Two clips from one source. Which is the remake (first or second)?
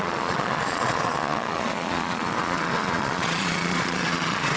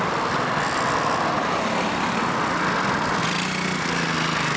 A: first